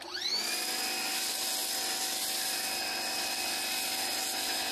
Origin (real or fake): real